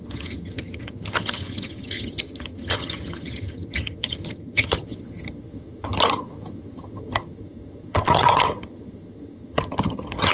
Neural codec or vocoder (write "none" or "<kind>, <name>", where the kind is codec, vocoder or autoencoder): vocoder, HiFi-GAN